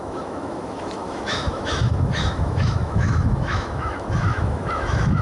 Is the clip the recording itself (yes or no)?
no